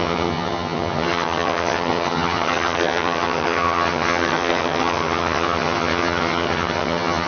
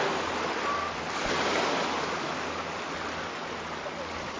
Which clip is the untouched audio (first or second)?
second